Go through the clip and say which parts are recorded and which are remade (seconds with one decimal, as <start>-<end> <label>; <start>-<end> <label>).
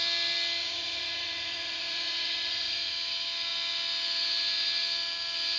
0.0-0.6 recorded; 0.6-2.9 remade; 2.9-5.6 recorded